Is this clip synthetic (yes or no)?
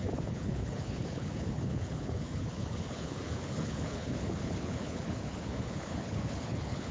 yes